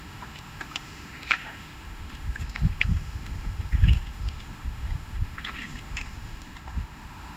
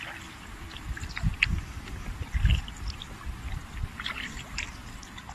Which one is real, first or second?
second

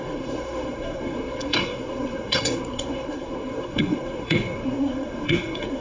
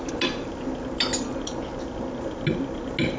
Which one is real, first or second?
second